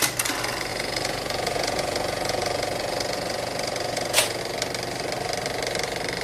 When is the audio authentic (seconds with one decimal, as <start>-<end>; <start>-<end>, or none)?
0.0-0.7; 4.4-6.2